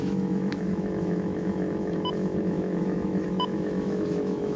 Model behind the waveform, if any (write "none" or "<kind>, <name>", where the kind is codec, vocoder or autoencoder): autoencoder, DAC-VAE